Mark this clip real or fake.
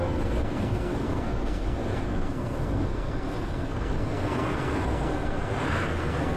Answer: fake